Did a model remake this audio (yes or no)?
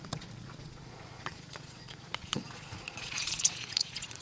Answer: yes